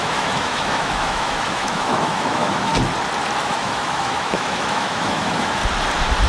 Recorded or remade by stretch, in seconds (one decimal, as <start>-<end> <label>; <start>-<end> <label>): 0.0-2.7 remade; 2.7-3.4 recorded; 3.4-5.6 remade; 5.6-6.3 recorded